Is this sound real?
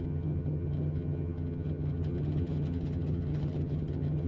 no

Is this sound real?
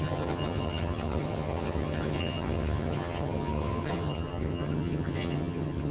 no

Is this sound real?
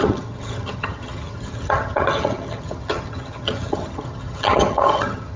no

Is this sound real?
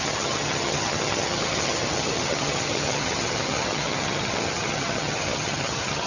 no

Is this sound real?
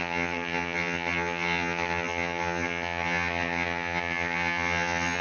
no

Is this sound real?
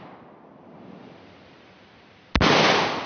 yes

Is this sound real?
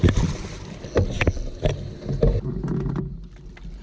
yes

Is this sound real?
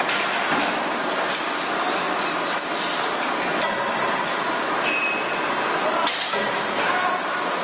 yes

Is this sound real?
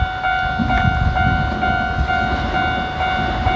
yes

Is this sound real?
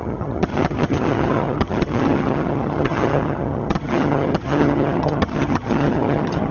no